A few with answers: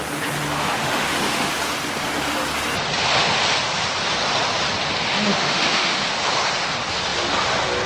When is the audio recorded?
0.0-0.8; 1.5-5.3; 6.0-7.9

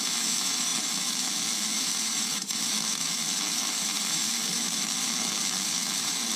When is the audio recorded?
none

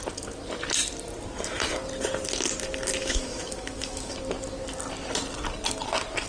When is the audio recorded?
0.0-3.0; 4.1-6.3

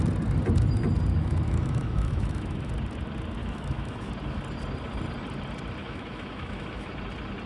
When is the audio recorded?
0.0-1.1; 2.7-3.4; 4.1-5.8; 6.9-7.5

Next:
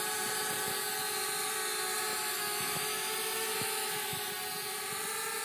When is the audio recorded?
0.0-2.1; 3.1-3.5; 4.3-5.4

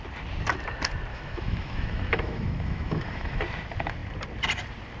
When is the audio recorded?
0.0-1.1; 3.4-5.0